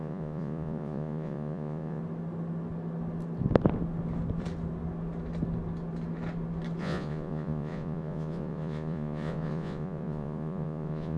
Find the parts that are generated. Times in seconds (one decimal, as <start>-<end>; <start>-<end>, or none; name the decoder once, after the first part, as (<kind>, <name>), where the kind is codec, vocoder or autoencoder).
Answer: 0.0-2.0 (vocoder, Vocos); 6.8-11.2